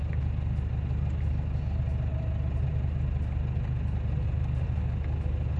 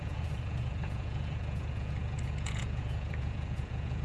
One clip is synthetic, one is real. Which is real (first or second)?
first